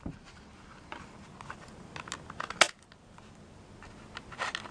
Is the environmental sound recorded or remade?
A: recorded